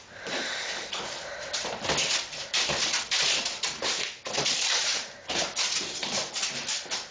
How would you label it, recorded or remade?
remade